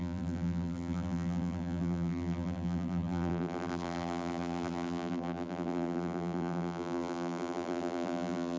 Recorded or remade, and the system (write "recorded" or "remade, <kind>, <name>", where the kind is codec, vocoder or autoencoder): remade, vocoder, BigVGAN v2